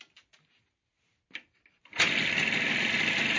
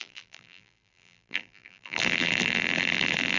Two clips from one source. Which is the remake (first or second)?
second